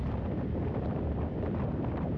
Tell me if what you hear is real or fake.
real